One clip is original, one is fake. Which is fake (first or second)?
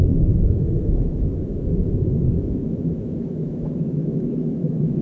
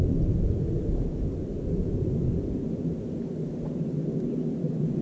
first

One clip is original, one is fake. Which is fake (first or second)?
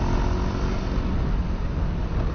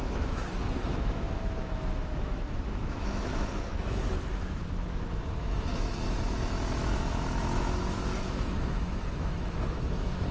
second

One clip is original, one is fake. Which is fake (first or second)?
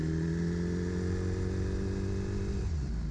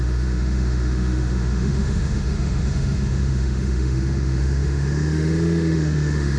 second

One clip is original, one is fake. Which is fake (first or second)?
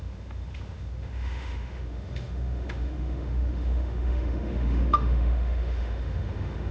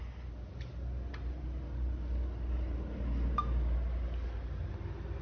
first